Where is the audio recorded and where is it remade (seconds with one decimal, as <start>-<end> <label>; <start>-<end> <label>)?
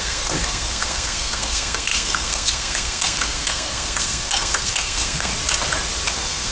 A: 0.0-5.3 remade; 5.3-6.1 recorded; 6.1-6.5 remade